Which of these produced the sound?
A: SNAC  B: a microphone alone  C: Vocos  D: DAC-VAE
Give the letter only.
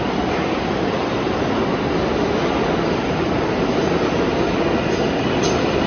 B